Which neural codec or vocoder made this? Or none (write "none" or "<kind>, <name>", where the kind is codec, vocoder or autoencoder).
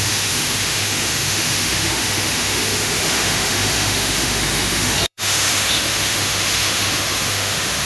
autoencoder, DAC-VAE